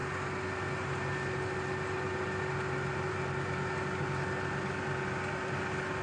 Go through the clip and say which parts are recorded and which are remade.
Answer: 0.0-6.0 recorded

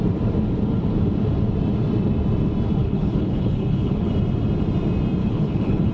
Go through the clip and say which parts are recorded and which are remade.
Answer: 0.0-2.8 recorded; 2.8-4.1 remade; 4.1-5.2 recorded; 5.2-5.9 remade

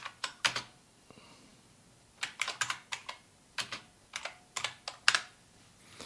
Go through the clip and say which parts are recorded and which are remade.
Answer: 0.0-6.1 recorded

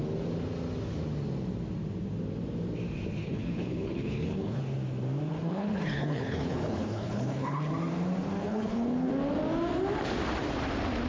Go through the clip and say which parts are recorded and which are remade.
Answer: 0.0-3.2 recorded; 3.2-4.6 remade; 4.6-5.3 recorded; 5.3-7.7 remade; 7.7-8.4 recorded; 8.4-9.1 remade; 9.1-11.1 recorded

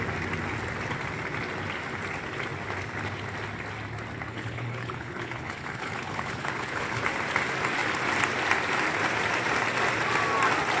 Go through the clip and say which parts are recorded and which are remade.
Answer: 0.0-4.3 recorded; 4.3-7.0 remade; 7.0-10.8 recorded

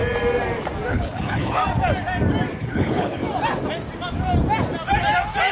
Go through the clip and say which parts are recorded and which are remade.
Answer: 0.0-0.9 recorded; 0.9-1.6 remade; 1.6-2.6 recorded; 2.6-3.2 remade; 3.2-5.5 recorded